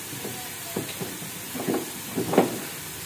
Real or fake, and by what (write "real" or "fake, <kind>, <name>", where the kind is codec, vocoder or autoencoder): real